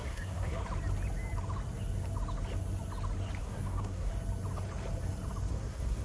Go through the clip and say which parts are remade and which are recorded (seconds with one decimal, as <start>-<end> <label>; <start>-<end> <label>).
0.0-0.6 remade; 0.6-3.4 recorded; 3.4-4.1 remade; 4.1-5.5 recorded; 5.5-6.0 remade